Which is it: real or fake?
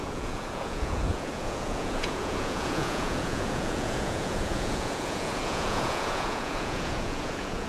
fake